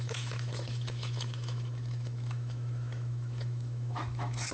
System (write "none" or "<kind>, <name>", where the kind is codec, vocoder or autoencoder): autoencoder, DAC-VAE